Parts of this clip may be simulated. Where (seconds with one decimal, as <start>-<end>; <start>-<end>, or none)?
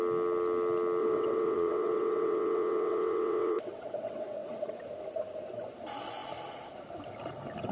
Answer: 1.0-4.9